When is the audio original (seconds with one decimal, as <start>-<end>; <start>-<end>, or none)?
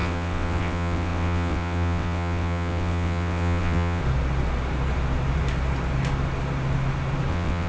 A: 4.0-7.3